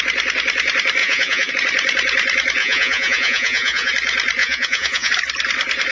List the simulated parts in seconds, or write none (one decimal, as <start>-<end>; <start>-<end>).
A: 1.0-1.5; 2.6-3.9; 4.4-5.1